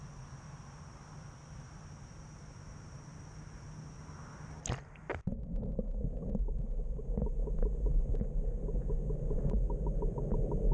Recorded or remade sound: recorded